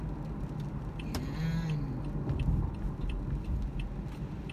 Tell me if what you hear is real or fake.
real